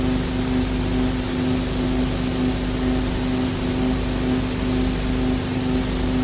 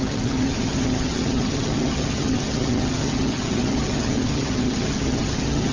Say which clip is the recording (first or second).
first